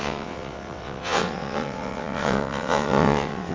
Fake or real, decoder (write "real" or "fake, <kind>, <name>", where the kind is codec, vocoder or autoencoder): fake, vocoder, WaveNeXt